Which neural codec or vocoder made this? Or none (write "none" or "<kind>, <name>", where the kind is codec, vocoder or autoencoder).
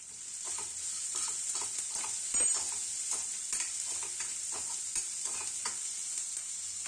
none